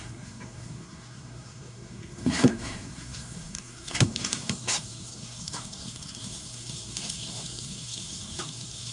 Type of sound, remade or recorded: remade